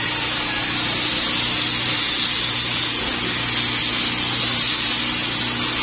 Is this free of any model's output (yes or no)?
yes